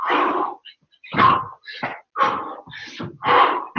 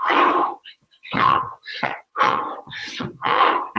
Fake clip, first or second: second